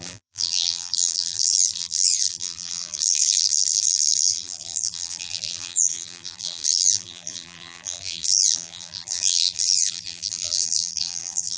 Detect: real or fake fake